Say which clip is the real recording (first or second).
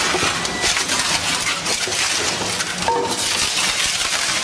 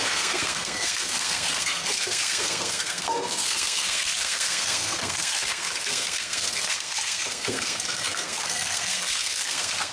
first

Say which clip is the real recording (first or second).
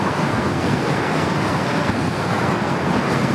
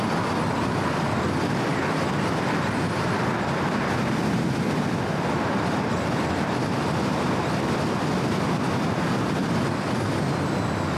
second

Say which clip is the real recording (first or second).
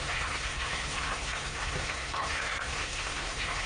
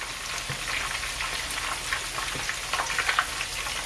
second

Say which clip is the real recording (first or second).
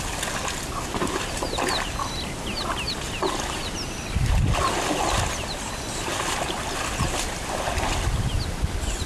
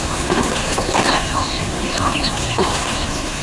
first